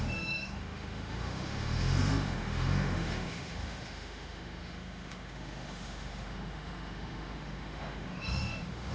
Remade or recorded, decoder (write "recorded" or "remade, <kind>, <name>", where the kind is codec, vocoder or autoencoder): remade, autoencoder, DAC-VAE